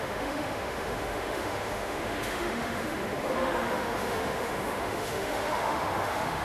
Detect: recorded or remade remade